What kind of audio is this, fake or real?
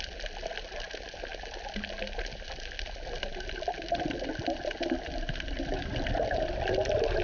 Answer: real